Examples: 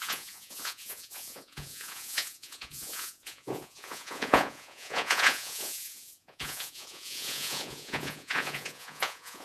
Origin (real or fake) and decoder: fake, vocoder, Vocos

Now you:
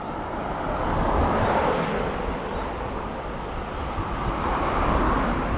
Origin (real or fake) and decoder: real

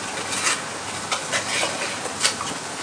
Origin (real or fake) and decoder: real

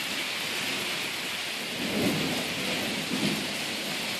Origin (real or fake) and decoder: real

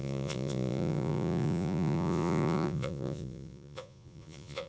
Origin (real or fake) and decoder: fake, vocoder, Vocos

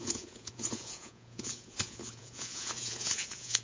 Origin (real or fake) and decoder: fake, vocoder, Vocos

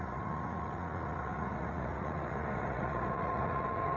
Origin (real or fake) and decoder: fake, vocoder, Vocos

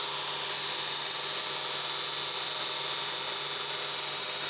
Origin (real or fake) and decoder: real